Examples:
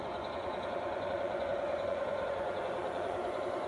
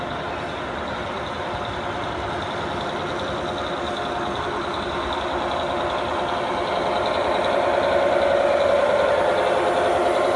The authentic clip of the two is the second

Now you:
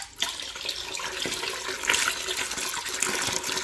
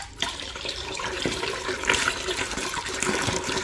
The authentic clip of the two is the first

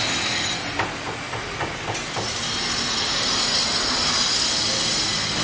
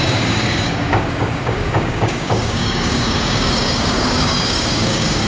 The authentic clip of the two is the first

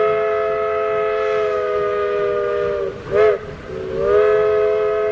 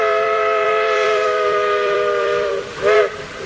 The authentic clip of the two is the first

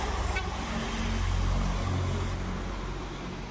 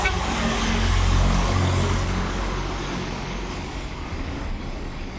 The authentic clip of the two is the first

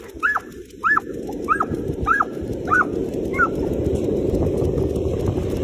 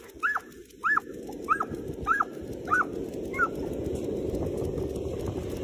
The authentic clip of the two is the second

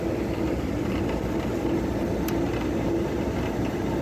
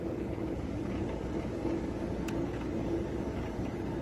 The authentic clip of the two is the first